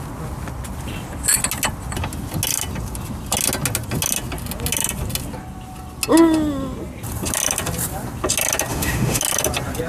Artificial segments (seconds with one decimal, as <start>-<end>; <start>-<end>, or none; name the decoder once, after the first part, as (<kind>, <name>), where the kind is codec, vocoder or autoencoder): 8.7-9.2 (autoencoder, DAC-VAE)